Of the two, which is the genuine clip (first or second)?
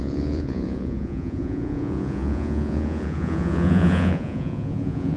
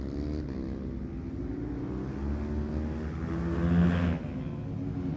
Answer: second